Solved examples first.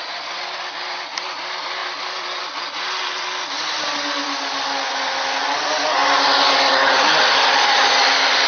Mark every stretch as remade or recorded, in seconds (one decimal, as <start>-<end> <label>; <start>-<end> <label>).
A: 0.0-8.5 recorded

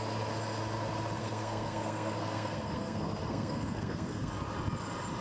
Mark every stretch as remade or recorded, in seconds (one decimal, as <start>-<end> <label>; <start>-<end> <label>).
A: 0.0-1.2 recorded; 1.2-4.3 remade; 4.3-5.2 recorded

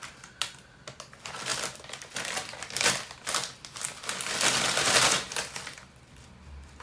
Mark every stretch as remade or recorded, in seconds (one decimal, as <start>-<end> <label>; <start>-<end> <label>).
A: 0.0-6.8 recorded

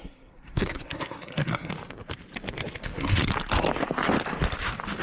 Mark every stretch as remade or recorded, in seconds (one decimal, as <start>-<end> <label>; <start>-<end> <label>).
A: 0.0-1.7 remade; 1.7-2.8 recorded; 2.8-3.2 remade; 3.2-5.0 recorded

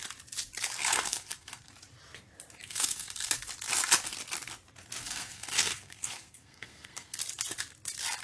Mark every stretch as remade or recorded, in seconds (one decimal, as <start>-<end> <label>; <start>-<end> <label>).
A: 0.0-0.8 recorded; 0.8-1.7 remade; 1.7-2.6 recorded; 2.6-3.3 remade; 3.3-5.0 recorded; 5.0-7.2 remade; 7.2-8.2 recorded

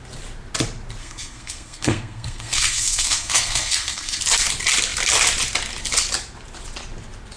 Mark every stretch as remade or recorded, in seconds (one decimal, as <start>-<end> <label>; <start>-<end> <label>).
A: 0.0-1.0 recorded; 1.0-4.2 remade; 4.2-7.4 recorded